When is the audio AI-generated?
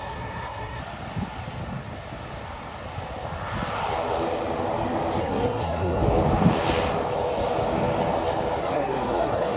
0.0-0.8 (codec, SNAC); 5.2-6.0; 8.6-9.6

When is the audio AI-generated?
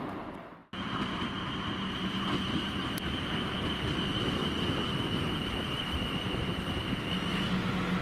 none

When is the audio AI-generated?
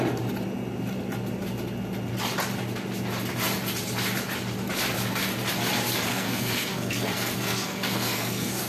6.1-8.7 (codec, SNAC)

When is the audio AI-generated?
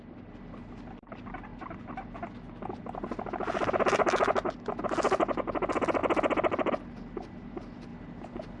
none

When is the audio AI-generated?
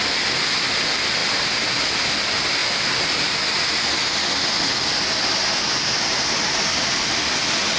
none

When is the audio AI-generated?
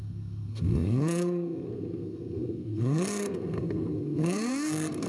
0.0-5.1 (codec, SNAC)